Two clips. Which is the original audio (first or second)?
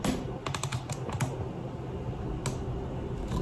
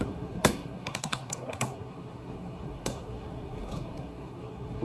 first